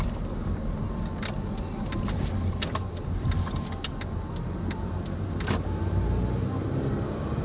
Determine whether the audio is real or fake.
real